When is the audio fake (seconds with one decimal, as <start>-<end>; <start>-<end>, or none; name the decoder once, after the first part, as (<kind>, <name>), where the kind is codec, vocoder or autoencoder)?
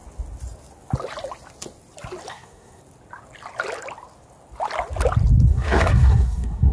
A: 2.3-2.8 (codec, SNAC); 5.5-6.7